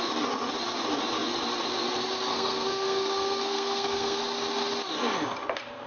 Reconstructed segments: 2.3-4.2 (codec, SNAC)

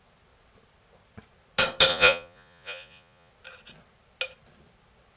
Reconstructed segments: 1.9-3.3 (vocoder, Vocos)